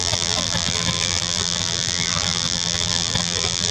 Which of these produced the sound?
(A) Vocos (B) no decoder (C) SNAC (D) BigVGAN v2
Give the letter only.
D